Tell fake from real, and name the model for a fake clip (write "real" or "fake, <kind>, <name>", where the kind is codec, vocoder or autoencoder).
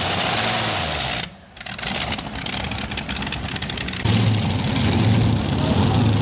real